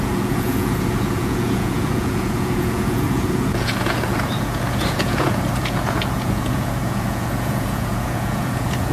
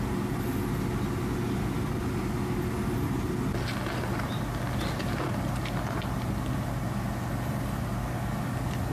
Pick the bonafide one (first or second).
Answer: second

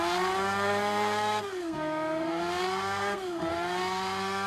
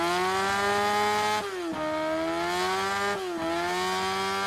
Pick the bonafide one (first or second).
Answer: second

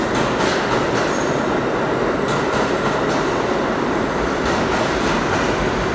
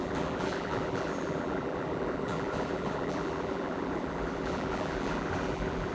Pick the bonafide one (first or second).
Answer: first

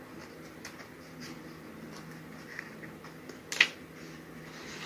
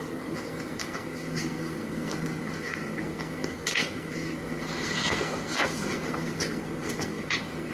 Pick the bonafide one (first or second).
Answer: first